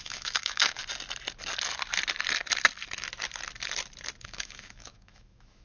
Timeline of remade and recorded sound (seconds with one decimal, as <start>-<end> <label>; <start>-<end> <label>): 0.0-0.8 remade; 0.8-4.2 recorded; 4.2-5.6 remade